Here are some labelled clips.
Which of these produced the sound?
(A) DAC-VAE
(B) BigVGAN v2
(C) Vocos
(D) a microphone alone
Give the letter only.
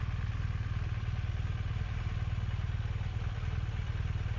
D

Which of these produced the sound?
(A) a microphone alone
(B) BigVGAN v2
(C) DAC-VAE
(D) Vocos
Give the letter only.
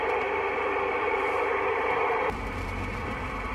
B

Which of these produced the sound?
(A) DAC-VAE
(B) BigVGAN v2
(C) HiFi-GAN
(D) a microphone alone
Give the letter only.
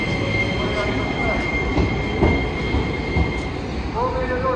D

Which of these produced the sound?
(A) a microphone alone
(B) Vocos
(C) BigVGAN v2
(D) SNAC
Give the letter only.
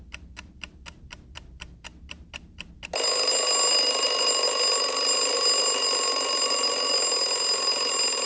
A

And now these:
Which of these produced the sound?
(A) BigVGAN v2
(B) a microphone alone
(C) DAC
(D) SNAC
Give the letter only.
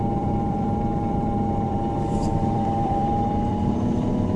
A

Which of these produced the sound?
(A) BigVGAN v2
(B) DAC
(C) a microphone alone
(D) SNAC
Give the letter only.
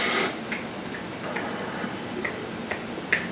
A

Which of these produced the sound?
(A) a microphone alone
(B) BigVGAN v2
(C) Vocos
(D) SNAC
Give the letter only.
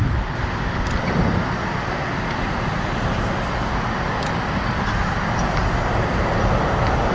A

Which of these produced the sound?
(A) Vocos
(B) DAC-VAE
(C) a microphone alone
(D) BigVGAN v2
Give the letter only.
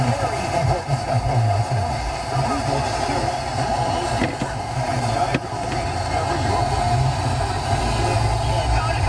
C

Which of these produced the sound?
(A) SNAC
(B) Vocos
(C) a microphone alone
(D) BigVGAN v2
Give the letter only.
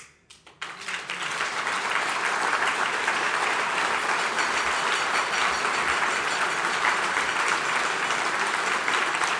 C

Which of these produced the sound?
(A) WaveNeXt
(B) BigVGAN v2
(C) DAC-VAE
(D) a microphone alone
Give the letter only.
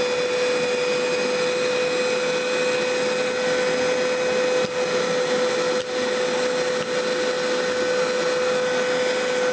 D